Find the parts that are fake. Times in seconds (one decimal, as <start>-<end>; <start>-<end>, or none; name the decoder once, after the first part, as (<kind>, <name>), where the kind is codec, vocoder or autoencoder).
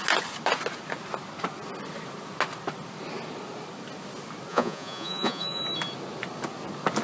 4.5-5.6 (vocoder, Vocos)